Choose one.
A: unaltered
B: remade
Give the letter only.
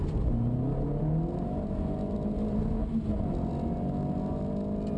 A